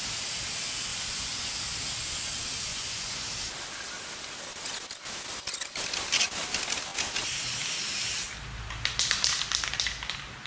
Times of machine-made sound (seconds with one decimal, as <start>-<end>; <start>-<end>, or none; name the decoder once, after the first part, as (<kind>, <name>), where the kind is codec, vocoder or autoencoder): 0.9-1.5 (vocoder, Vocos); 2.7-3.3